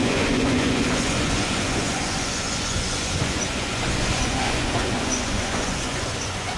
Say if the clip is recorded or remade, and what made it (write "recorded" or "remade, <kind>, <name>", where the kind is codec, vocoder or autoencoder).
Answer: remade, vocoder, Vocos